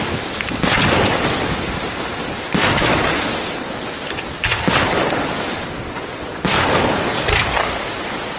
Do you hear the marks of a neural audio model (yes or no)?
no